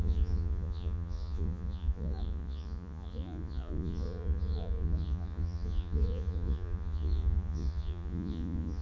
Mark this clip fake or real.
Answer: fake